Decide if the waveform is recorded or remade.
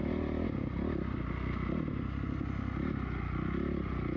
recorded